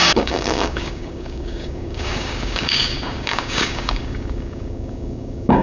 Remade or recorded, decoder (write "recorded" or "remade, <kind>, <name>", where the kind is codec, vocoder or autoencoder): remade, codec, DAC